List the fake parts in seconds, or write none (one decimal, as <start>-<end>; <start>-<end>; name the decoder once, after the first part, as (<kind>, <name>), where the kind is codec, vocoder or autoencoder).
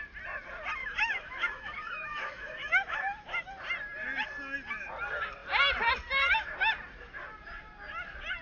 0.8-3.6 (autoencoder, DAC-VAE)